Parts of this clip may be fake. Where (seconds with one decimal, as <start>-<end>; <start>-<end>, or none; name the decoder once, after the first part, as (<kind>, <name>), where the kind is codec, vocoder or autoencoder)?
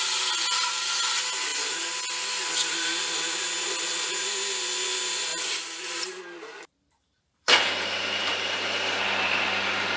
5.3-8.9 (vocoder, BigVGAN v2)